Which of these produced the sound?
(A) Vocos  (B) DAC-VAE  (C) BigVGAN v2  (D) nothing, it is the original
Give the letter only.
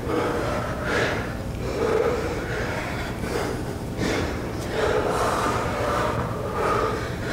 C